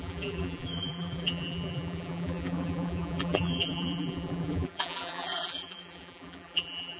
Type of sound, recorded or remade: remade